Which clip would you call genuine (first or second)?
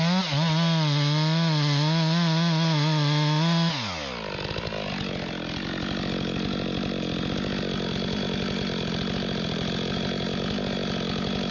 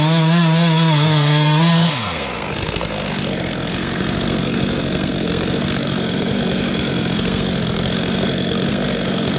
first